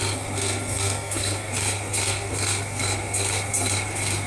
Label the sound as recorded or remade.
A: remade